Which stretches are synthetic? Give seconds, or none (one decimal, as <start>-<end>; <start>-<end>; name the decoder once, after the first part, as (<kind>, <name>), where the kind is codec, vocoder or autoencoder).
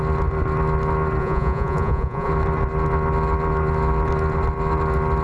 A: 1.2-2.3 (vocoder, Vocos)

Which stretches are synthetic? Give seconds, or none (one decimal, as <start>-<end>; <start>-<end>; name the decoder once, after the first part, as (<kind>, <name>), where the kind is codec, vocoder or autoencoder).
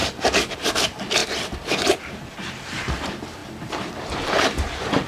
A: 0.0-1.2 (vocoder, BigVGAN v2); 2.0-5.1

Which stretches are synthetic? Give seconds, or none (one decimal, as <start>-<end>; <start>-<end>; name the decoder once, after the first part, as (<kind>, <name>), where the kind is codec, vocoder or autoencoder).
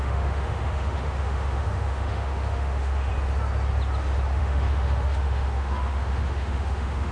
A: 0.0-3.1 (autoencoder, DAC-VAE); 4.4-7.1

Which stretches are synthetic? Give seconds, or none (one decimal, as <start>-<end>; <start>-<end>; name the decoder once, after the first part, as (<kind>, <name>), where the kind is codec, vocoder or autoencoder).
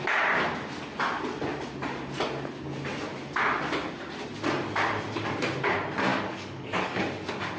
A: 6.1-7.0 (codec, DAC)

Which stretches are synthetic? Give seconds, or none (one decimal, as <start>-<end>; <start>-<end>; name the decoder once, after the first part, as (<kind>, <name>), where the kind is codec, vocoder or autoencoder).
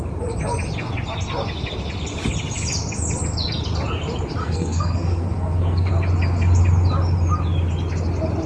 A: 4.4-5.9 (codec, SNAC)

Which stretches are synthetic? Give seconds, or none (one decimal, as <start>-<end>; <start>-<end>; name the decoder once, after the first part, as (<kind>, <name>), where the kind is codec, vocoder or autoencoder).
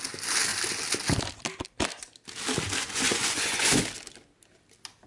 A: 2.8-3.8 (vocoder, Vocos)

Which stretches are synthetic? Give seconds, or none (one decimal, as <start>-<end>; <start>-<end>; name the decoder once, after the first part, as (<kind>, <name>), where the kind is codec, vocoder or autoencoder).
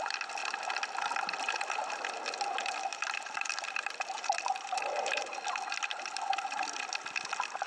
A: 2.9-5.3 (vocoder, BigVGAN v2)